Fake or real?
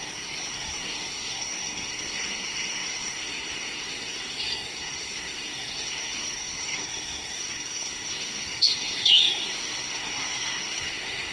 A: fake